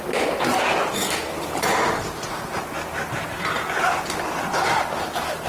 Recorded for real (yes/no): yes